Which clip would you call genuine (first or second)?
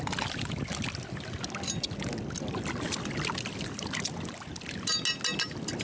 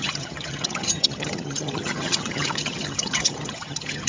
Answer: first